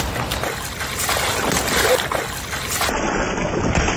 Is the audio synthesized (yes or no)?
no